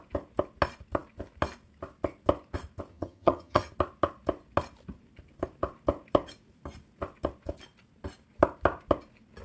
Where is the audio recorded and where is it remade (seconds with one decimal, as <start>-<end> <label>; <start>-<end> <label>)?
0.0-2.9 recorded; 2.9-3.7 remade; 3.7-9.4 recorded